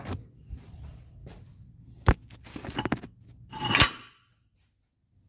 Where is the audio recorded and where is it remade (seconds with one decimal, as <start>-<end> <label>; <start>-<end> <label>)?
0.0-5.3 recorded